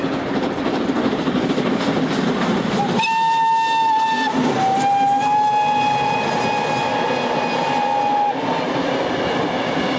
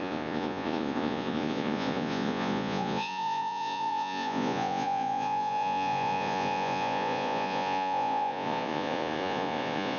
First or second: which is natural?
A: first